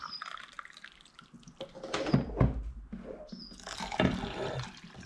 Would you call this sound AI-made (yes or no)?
no